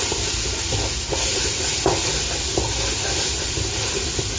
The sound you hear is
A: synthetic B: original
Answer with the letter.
B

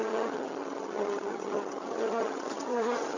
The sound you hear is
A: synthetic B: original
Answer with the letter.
A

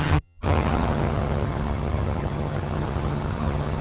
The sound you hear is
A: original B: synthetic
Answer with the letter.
B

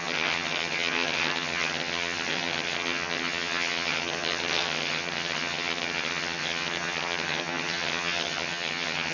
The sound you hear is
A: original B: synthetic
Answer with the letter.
B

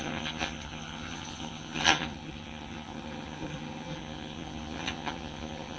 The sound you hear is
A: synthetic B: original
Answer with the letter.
A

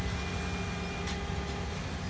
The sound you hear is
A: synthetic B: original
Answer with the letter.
B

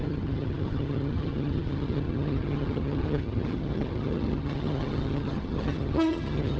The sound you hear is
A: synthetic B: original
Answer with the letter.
A